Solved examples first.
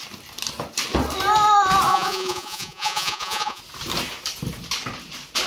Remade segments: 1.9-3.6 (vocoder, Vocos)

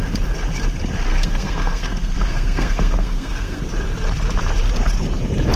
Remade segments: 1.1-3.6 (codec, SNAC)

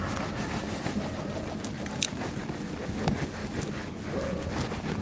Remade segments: none

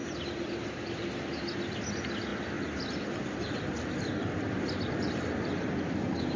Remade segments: 0.0-2.3 (vocoder, BigVGAN v2); 3.1-6.4

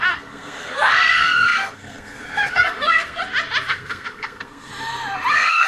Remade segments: 0.0-3.2 (codec, SNAC); 3.7-4.7; 5.3-5.7

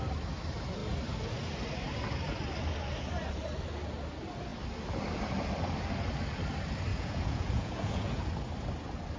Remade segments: 6.9-8.2 (vocoder, Vocos)